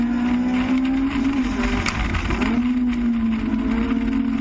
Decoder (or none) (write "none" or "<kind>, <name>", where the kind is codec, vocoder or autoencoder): none